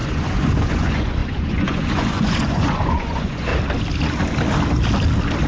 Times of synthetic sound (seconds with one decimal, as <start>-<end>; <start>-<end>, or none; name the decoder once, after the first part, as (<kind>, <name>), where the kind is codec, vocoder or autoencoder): 0.0-3.5 (vocoder, Vocos)